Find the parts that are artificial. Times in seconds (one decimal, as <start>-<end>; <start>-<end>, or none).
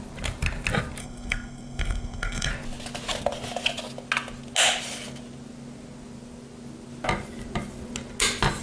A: 1.0-2.5